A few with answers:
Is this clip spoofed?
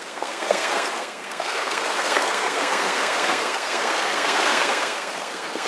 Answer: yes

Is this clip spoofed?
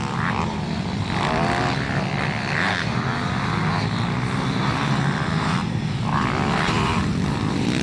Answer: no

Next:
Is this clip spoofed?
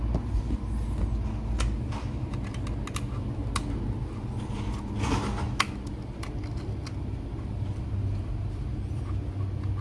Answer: no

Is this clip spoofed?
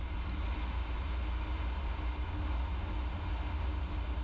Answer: no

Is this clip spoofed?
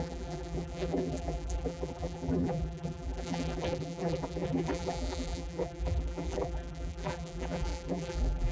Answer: yes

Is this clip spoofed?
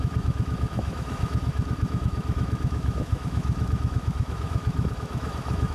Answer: yes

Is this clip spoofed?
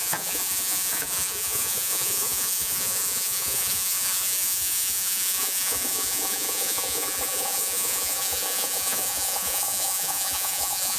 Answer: yes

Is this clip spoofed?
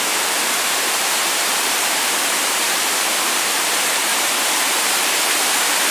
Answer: yes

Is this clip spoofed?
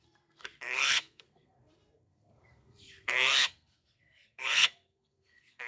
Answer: yes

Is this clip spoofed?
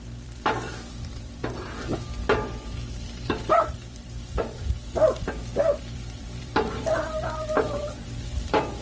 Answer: yes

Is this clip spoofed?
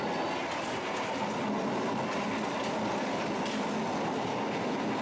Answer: no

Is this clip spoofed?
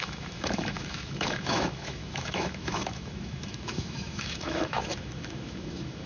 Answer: yes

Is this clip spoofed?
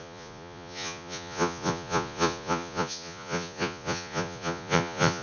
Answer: yes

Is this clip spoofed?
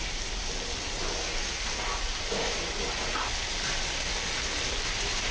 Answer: no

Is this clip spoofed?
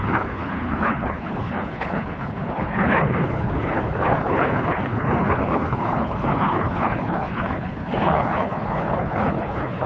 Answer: yes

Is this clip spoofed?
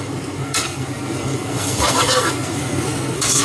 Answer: yes